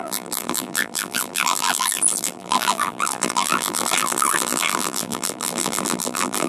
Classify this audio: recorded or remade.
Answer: remade